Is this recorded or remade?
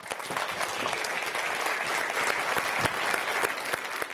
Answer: recorded